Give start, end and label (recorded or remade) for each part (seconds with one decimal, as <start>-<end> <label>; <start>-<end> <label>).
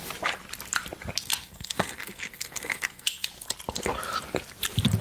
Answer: 0.0-1.2 recorded; 1.2-3.3 remade; 3.3-5.0 recorded